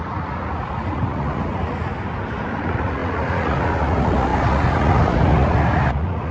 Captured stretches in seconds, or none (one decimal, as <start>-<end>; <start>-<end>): 1.9-2.6